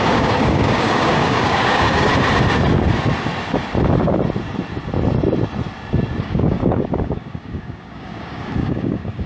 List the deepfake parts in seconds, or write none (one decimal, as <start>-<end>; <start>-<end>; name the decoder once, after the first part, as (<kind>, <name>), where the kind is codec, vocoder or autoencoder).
0.0-2.1 (codec, DAC); 6.2-9.3

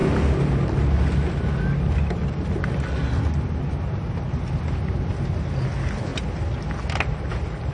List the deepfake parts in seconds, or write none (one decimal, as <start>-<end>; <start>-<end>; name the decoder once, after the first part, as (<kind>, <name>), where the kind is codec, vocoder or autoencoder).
none

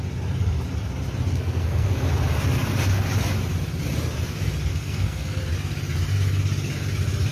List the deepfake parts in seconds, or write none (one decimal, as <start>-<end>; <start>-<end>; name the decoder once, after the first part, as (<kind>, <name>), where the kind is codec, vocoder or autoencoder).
1.3-2.1 (codec, SNAC); 4.7-5.4

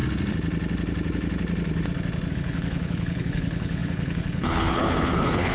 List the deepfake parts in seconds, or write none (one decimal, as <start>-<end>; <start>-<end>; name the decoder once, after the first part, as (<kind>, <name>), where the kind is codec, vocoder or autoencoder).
2.3-5.5 (codec, HILCodec)